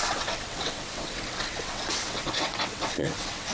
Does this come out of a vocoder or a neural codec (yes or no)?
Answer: yes